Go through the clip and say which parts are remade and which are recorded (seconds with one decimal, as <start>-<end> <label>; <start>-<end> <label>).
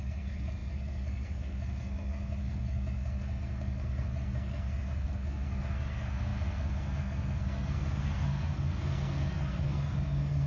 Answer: 0.0-10.5 remade